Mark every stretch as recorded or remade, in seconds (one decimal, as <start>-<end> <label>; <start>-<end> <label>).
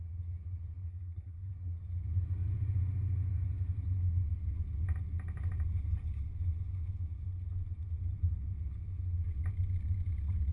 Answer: 0.0-0.9 recorded; 0.9-1.5 remade; 1.5-10.5 recorded